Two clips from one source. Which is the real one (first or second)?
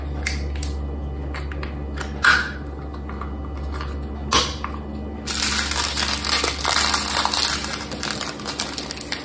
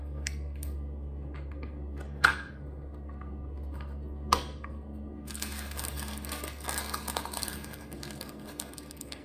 first